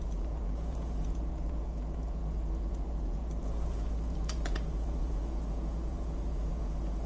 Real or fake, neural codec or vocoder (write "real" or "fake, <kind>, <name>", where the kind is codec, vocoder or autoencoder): fake, vocoder, Vocos